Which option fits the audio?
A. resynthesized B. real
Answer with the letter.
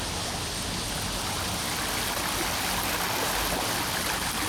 B